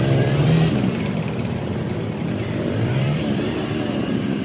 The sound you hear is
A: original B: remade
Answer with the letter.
B